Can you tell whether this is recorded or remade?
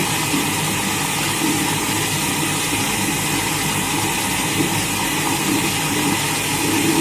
recorded